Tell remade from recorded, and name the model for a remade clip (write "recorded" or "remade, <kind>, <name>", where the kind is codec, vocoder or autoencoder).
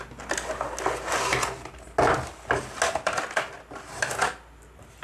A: recorded